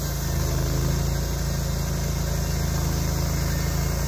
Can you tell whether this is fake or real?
real